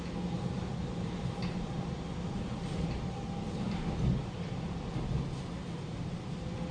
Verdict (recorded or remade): recorded